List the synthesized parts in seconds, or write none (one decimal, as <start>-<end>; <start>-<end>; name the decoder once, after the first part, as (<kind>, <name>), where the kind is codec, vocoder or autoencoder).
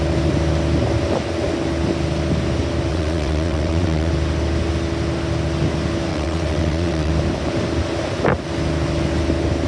2.9-4.1 (vocoder, WaveNeXt); 6.1-7.1